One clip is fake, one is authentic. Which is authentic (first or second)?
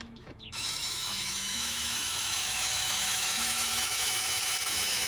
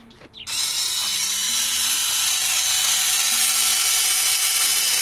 second